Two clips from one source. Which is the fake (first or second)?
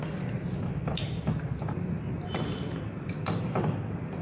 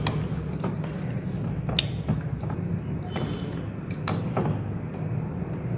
first